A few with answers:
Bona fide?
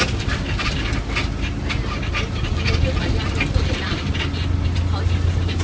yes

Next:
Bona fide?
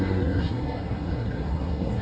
no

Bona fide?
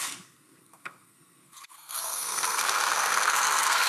no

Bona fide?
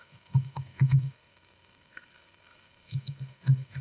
no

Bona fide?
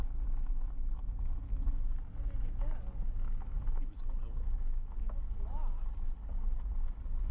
yes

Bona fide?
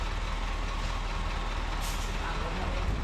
yes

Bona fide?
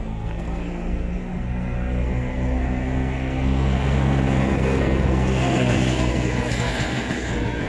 no